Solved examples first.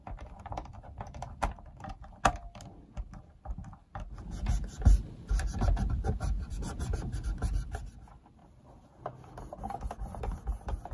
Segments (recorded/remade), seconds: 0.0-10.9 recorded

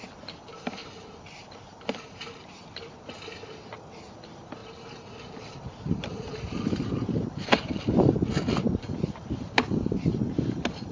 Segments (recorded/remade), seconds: 0.0-0.8 recorded; 0.8-2.9 remade; 2.9-4.6 recorded; 4.6-8.6 remade; 8.6-10.9 recorded

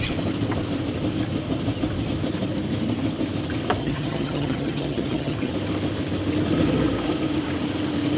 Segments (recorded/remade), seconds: 0.0-3.8 recorded; 3.8-5.5 remade; 5.5-8.2 recorded

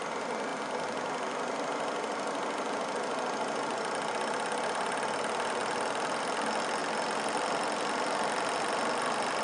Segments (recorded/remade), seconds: 0.0-9.4 recorded

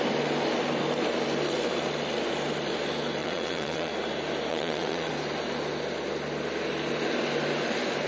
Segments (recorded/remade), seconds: 0.0-3.2 recorded; 3.2-3.9 remade; 3.9-4.5 recorded; 4.5-5.1 remade; 5.1-8.1 recorded

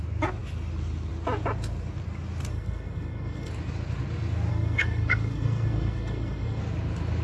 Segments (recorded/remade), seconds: 0.0-2.5 recorded; 2.5-3.5 remade; 3.5-4.5 recorded; 4.5-6.6 remade; 6.6-7.2 recorded

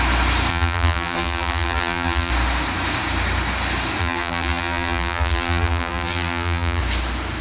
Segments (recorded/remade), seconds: 0.0-0.5 recorded; 0.5-2.3 remade; 2.3-4.0 recorded; 4.0-6.8 remade; 6.8-7.4 recorded